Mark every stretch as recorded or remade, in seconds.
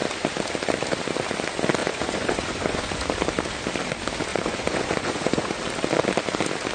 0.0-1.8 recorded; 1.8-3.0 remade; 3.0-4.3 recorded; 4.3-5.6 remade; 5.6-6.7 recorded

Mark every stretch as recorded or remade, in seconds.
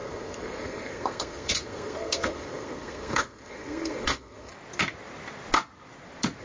0.0-4.5 remade; 4.5-6.4 recorded